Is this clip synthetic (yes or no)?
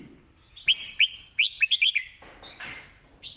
no